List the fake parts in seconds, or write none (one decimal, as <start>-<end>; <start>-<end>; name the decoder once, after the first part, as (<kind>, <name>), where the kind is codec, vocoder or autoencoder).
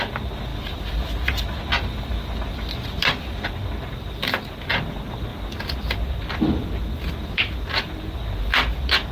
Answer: none